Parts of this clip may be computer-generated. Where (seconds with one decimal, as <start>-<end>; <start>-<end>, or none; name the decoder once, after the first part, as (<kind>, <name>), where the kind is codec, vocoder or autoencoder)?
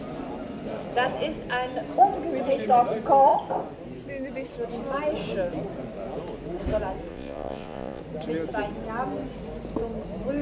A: 7.1-8.0 (vocoder, Vocos)